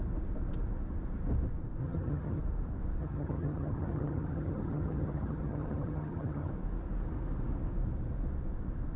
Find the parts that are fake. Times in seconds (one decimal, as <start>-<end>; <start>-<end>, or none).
1.8-2.4; 3.0-6.5